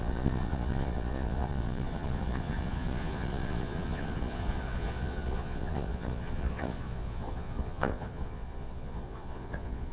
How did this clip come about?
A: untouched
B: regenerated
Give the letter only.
B